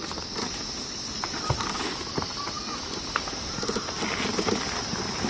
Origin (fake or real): real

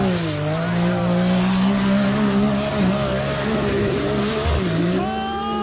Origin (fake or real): real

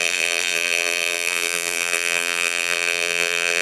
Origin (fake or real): fake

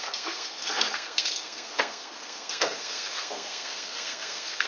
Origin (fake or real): fake